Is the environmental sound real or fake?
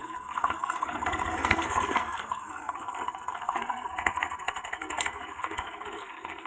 fake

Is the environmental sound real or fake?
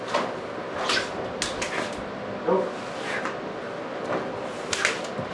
real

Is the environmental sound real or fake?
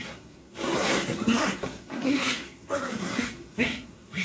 fake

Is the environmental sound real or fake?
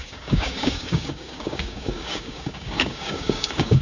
fake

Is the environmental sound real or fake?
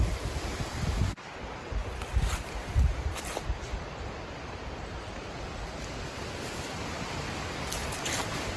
real